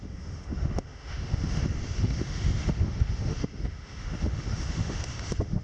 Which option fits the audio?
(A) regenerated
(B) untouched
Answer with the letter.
A